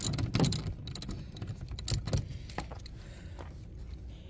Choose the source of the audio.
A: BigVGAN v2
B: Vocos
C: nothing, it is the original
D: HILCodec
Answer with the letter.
C